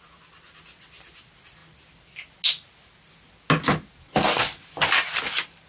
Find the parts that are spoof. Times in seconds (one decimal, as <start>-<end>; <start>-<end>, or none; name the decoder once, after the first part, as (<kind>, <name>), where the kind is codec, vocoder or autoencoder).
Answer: none